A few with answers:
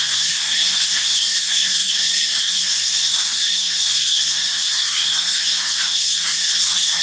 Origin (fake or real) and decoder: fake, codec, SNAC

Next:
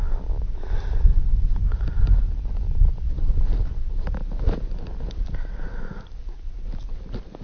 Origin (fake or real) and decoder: real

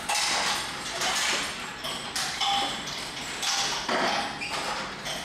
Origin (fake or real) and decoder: real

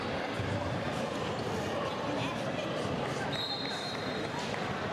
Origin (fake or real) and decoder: real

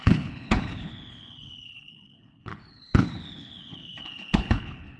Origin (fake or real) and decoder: fake, codec, HILCodec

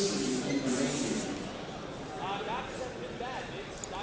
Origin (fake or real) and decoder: real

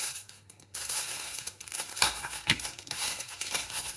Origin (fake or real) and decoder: fake, codec, SNAC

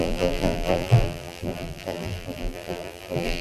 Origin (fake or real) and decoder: fake, vocoder, BigVGAN v2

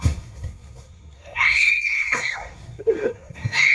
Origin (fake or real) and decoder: fake, codec, SNAC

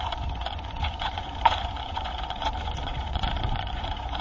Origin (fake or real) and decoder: fake, vocoder, Vocos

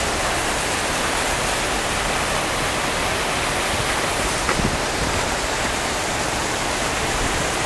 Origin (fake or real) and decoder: real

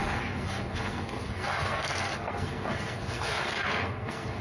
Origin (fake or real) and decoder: fake, codec, SNAC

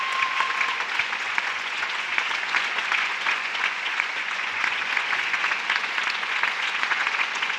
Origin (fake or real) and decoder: fake, vocoder, Vocos